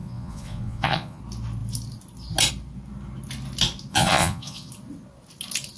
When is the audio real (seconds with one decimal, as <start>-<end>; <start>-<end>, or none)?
1.2-3.9; 4.7-5.8